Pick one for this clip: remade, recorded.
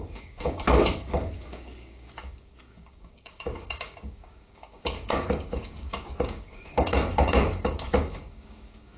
remade